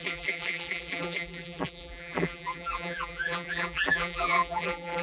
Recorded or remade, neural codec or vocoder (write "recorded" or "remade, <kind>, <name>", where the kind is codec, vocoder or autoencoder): remade, vocoder, BigVGAN v2